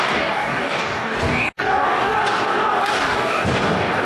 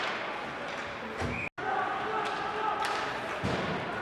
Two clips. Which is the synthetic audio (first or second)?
first